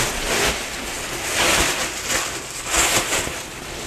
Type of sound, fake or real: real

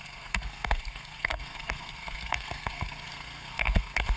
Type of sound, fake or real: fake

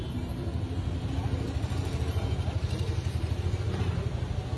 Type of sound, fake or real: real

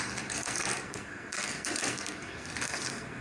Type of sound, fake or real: fake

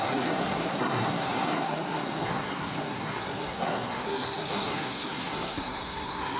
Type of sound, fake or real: fake